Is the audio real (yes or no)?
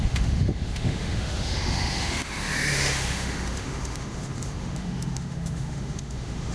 no